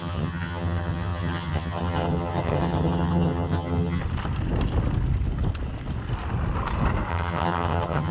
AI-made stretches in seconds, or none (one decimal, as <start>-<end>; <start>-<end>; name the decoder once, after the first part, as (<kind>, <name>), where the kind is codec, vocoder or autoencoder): 0.0-4.0 (vocoder, HiFi-GAN); 7.1-8.1